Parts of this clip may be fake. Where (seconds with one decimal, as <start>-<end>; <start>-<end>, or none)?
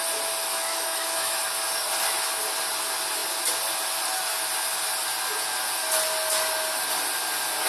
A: 0.4-1.4